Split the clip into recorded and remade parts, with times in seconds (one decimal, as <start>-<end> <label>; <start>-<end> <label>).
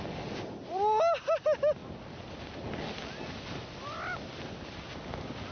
0.0-5.5 recorded